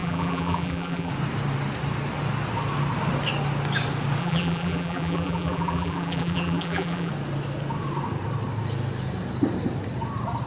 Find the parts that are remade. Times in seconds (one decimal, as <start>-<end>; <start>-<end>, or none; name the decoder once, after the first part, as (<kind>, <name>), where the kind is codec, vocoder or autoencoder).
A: 0.0-1.1 (vocoder, BigVGAN v2); 4.2-7.1